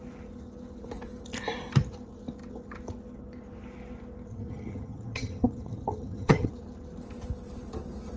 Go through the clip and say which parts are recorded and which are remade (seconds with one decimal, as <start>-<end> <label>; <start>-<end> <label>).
0.0-4.3 recorded; 4.3-6.5 remade; 6.5-8.2 recorded